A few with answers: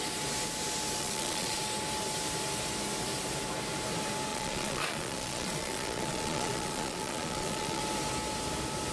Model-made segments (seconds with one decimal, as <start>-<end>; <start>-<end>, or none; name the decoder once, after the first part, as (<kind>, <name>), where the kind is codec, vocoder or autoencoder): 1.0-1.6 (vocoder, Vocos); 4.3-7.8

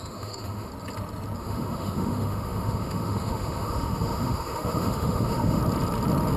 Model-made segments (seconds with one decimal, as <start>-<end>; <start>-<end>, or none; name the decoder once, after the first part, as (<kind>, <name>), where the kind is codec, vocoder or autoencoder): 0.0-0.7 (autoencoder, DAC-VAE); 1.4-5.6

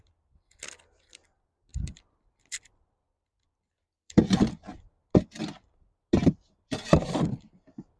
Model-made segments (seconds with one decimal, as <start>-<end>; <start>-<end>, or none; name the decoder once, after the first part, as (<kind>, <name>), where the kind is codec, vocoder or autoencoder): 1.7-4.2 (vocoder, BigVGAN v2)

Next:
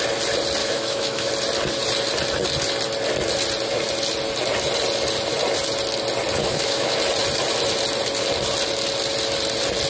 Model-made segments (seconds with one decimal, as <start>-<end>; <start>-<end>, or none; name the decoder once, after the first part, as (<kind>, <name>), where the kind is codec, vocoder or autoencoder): 0.6-1.3 (autoencoder, DAC-VAE); 6.4-7.0